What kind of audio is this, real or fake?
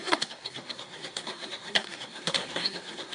fake